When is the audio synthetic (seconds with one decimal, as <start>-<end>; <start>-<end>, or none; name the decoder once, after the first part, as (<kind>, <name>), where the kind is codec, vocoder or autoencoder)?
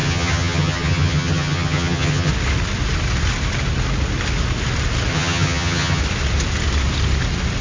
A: 0.0-2.3 (vocoder, HiFi-GAN); 5.1-6.0